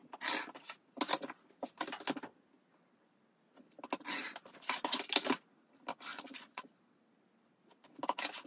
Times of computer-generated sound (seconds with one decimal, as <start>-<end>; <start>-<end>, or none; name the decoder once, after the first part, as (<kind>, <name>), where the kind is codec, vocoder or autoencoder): 6.1-7.0 (vocoder, Vocos)